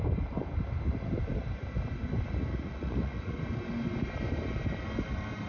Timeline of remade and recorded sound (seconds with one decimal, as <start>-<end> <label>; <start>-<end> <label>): 0.0-2.5 recorded; 2.5-3.4 remade; 3.4-5.5 recorded